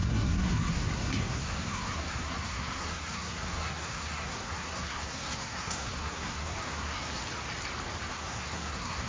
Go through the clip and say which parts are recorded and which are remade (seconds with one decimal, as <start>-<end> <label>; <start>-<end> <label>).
0.0-7.2 remade; 7.2-8.1 recorded; 8.1-9.1 remade